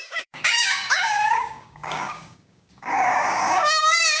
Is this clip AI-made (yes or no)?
yes